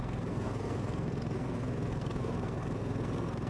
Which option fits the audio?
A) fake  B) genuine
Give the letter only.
A